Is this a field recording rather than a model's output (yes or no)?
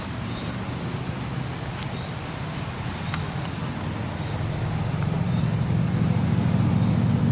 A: yes